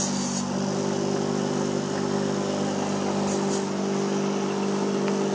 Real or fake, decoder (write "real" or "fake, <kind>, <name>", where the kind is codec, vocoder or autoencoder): real